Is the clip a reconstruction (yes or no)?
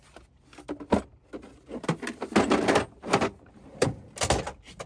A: no